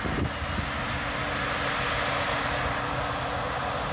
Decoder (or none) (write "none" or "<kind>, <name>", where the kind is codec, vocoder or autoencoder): none